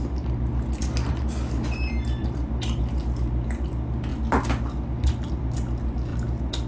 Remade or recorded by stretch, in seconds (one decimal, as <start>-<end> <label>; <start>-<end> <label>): 0.0-2.2 recorded; 2.2-2.8 remade; 2.8-6.1 recorded; 6.1-6.7 remade